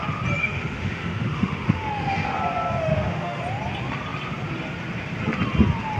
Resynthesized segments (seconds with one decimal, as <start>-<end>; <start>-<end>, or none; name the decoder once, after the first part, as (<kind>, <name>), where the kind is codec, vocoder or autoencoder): 0.4-2.4 (autoencoder, DAC-VAE); 2.8-3.4